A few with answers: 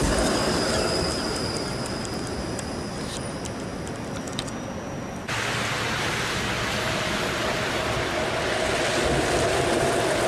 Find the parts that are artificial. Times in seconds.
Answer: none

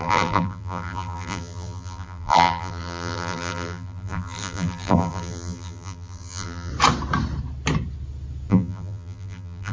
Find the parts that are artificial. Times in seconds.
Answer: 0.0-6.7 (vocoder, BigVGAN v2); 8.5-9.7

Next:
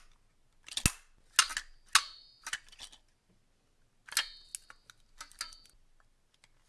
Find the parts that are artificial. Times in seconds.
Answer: none